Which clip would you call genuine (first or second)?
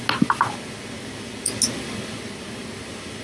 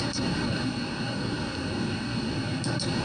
first